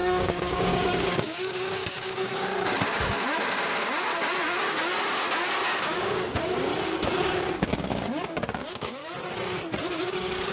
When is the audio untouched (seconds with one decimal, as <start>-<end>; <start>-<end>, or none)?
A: 4.1-5.8; 6.7-7.5; 9.0-9.9